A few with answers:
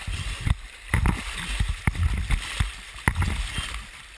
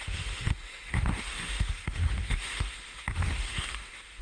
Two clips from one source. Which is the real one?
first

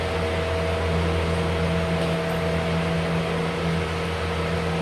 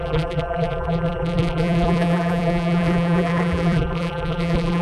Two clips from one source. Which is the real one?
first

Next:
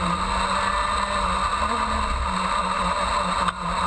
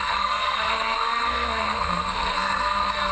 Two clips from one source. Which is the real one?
first